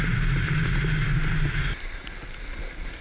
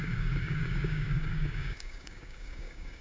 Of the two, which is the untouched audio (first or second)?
first